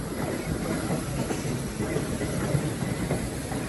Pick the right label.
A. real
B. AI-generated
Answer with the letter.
B